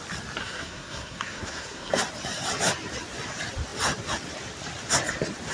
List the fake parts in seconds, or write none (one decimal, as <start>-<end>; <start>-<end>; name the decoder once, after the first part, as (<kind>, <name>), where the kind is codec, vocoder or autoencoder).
0.4-1.9 (codec, SNAC)